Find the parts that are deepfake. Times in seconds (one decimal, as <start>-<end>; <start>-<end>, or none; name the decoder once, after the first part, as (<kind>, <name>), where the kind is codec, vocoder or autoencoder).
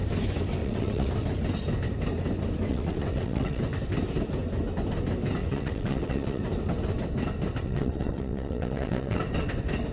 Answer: 0.6-1.1 (vocoder, WaveNeXt); 2.7-3.6; 5.4-6.4; 7.6-9.2